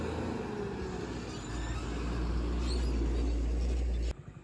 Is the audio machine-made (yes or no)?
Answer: no